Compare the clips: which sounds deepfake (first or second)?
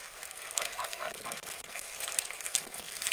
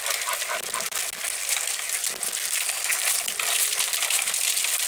first